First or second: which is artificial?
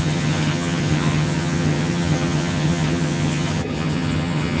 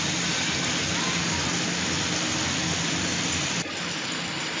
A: first